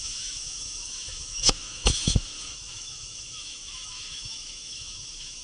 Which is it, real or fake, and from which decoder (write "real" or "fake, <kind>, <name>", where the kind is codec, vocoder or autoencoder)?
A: fake, autoencoder, DAC-VAE